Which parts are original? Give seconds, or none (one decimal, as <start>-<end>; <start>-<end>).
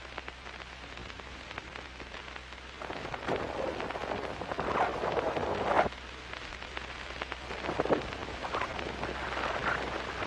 0.0-10.3